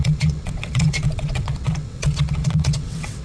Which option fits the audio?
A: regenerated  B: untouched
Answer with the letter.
A